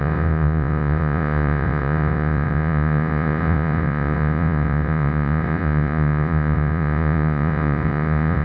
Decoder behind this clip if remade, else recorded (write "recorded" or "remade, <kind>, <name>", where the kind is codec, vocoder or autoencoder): remade, vocoder, Vocos